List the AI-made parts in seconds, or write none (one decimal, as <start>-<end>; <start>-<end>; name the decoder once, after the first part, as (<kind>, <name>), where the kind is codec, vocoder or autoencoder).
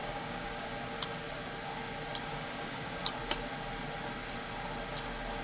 0.0-0.7 (codec, DAC); 2.3-3.0